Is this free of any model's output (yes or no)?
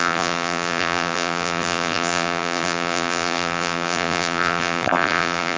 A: no